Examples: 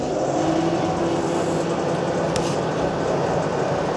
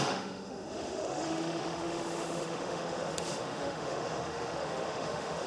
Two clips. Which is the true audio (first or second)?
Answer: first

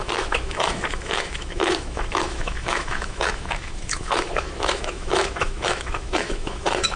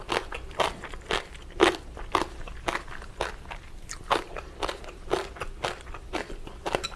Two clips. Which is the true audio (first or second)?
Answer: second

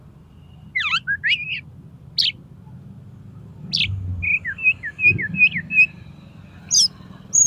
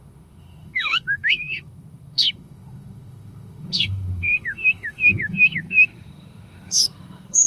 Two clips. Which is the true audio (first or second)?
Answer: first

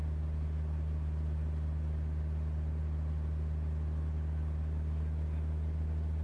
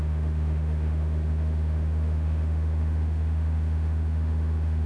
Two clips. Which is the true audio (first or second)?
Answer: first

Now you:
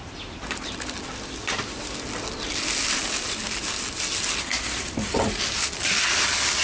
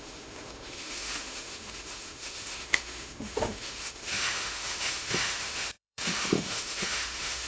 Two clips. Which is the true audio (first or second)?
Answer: first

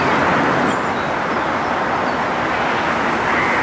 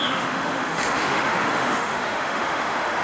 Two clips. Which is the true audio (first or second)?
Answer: first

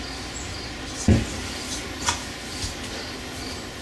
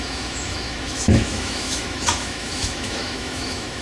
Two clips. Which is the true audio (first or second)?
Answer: first